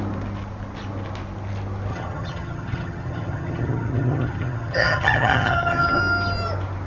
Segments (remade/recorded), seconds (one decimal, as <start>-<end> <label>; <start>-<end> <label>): 0.0-1.9 recorded; 1.9-6.0 remade; 6.0-6.9 recorded